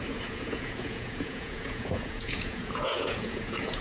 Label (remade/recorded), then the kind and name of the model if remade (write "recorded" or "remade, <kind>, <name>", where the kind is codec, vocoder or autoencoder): remade, vocoder, Vocos